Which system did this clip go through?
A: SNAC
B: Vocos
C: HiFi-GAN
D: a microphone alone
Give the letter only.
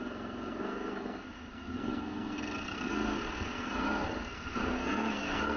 A